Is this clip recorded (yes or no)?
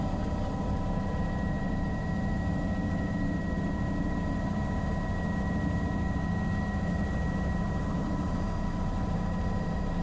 no